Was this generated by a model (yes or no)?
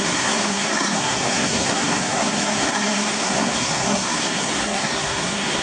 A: yes